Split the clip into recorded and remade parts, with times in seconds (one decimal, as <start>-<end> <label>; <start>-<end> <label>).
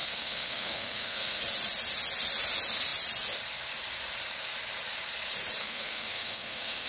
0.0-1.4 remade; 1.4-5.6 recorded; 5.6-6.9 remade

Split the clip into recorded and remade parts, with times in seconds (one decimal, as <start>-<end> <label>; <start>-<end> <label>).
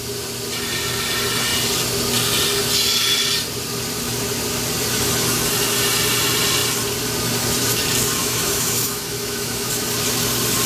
0.0-8.2 recorded; 8.2-9.7 remade; 9.7-10.7 recorded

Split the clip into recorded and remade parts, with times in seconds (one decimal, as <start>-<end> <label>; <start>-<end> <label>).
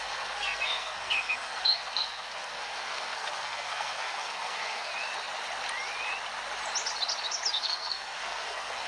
0.0-4.9 remade; 4.9-7.5 recorded; 7.5-8.9 remade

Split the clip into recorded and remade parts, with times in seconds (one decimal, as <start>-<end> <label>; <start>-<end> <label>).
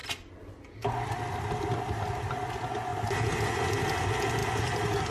0.0-5.1 recorded